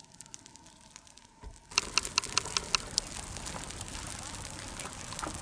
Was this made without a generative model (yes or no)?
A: yes